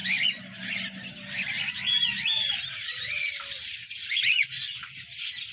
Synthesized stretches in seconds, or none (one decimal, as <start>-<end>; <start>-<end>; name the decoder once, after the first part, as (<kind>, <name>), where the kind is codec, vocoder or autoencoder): none